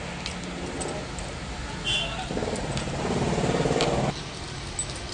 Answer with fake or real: real